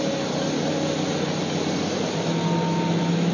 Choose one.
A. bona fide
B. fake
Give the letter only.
A